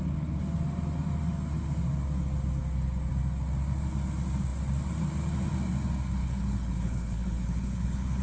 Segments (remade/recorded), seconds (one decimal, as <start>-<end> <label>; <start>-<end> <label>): 0.0-6.2 recorded; 6.2-8.2 remade